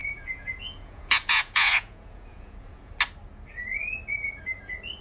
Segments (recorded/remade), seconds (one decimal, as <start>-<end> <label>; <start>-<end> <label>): 0.0-2.9 remade; 2.9-5.0 recorded